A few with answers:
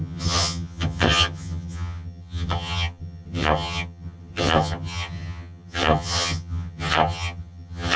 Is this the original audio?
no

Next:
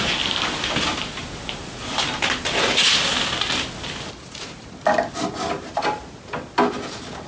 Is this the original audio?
yes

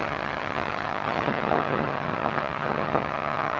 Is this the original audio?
no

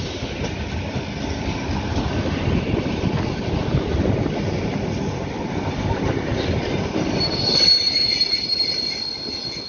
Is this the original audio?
yes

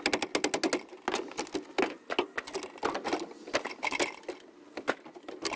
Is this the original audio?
yes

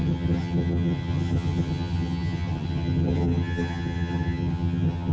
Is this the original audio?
no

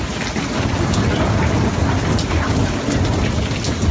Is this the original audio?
yes